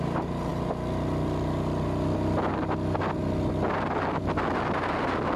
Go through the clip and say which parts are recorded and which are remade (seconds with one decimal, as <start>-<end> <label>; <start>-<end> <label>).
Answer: 0.0-5.4 recorded